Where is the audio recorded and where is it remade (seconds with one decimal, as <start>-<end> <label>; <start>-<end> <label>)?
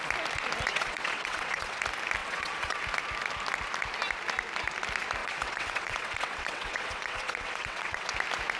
0.0-0.7 recorded; 0.7-1.8 remade; 1.8-2.2 recorded; 2.2-2.8 remade; 2.8-5.2 recorded; 5.2-8.1 remade; 8.1-8.6 recorded